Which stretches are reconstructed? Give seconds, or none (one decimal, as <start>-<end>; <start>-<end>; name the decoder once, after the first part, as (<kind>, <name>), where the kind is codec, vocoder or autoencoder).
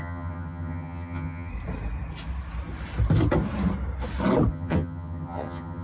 0.0-1.5 (vocoder, HiFi-GAN); 4.5-5.8